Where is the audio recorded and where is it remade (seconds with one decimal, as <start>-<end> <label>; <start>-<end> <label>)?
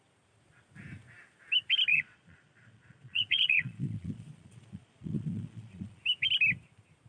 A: 0.0-1.9 recorded; 1.9-6.0 remade; 6.0-7.1 recorded